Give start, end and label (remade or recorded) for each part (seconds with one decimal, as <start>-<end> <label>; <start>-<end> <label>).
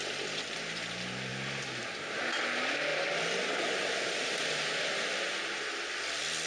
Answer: 0.0-6.5 recorded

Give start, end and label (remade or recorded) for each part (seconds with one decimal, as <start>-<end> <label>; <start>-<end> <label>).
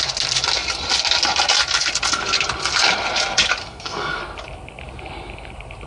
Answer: 0.0-3.6 recorded; 3.6-4.2 remade; 4.2-5.9 recorded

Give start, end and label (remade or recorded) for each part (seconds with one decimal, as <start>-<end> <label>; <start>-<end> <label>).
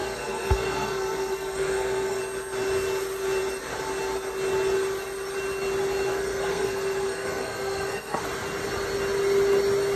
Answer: 0.0-2.2 remade; 2.2-6.1 recorded; 6.1-8.2 remade; 8.2-10.0 recorded